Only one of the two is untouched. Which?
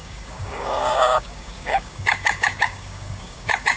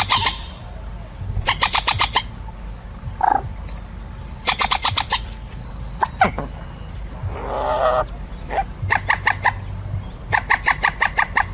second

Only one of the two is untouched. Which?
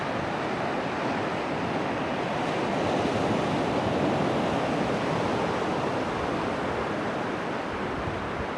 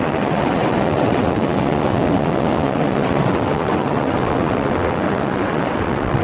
first